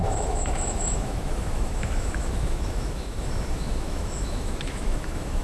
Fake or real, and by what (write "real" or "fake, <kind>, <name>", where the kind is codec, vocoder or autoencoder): fake, autoencoder, DAC-VAE